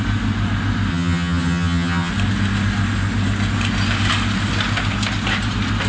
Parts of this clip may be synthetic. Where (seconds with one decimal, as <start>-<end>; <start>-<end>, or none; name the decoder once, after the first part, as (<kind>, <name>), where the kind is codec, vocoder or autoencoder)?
0.9-2.1 (vocoder, HiFi-GAN)